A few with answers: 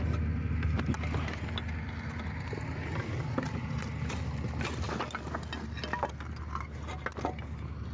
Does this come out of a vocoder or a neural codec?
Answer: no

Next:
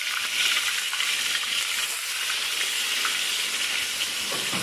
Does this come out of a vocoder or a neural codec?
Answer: no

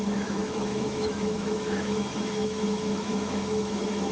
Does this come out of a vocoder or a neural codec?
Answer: yes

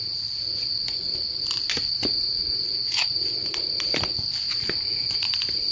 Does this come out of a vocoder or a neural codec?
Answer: no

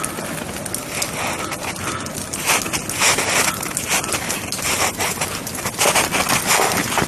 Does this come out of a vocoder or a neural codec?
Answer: no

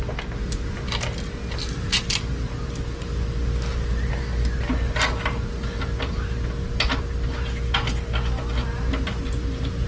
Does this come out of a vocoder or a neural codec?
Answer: no